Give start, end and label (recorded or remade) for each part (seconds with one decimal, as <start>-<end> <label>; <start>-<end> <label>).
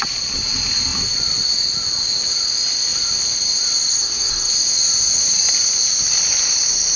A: 0.0-3.9 recorded; 3.9-4.5 remade; 4.5-7.0 recorded